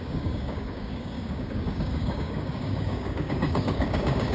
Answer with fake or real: fake